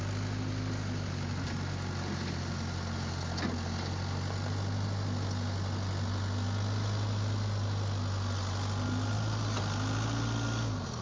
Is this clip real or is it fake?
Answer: real